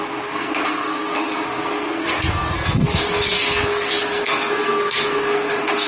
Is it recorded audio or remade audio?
remade